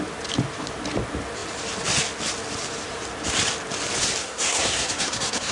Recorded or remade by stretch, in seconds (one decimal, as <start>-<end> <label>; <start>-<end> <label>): 0.0-4.2 recorded; 4.2-5.5 remade